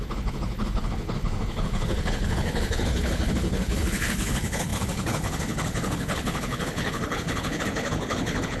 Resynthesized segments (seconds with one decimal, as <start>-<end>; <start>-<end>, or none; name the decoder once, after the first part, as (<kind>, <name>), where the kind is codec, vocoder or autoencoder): 0.0-8.6 (codec, HILCodec)